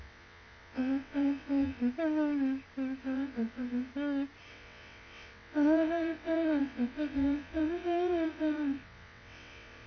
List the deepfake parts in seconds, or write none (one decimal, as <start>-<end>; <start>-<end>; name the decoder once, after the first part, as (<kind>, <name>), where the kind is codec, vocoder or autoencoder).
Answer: 0.0-1.8 (vocoder, WaveNeXt); 3.0-3.9; 4.5-9.9